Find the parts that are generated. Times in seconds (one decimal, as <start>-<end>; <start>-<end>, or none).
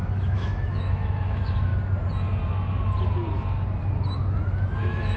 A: 0.0-1.7; 4.8-5.2